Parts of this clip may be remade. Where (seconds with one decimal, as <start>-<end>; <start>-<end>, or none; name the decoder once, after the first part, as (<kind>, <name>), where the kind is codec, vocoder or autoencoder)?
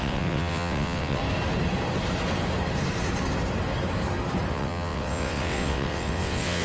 0.0-1.2 (vocoder, WaveNeXt); 4.5-6.6